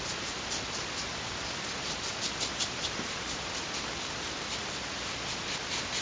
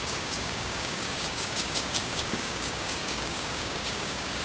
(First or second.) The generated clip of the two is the second